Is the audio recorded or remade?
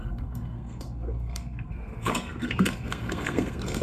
remade